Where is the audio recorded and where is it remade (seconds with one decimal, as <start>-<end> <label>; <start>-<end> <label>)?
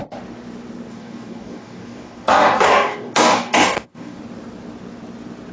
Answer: 0.0-0.9 recorded; 0.9-4.2 remade; 4.2-5.5 recorded